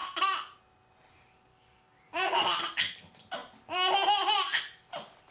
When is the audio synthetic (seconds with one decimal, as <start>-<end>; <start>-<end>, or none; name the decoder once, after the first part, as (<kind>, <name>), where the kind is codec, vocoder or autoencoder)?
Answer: 1.5-2.6 (codec, DAC)

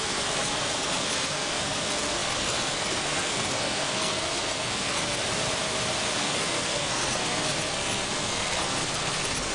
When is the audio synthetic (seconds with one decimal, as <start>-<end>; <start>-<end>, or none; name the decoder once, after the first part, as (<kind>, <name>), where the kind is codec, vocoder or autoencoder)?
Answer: 0.0-5.2 (codec, SNAC); 6.2-9.5

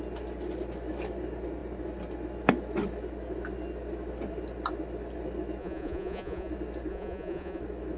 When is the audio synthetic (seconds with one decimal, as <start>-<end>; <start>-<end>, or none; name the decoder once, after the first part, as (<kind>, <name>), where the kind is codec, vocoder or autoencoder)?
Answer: 5.6-6.5 (vocoder, Vocos); 6.9-7.6